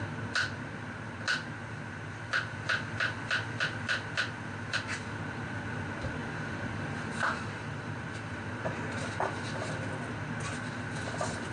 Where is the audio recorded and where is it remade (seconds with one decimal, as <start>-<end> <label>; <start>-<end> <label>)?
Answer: 0.0-6.2 recorded; 6.2-8.8 remade; 8.8-11.5 recorded